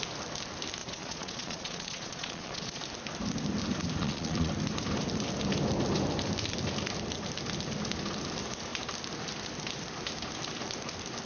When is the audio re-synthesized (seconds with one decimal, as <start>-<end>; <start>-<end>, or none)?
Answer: 0.8-2.8; 4.0-4.5